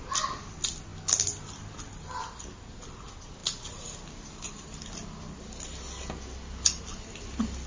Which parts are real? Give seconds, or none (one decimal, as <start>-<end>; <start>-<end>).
0.0-7.7